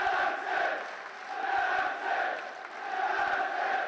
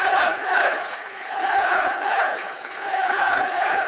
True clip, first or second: first